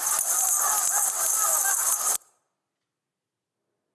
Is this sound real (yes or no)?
yes